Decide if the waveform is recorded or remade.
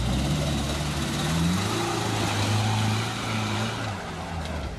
recorded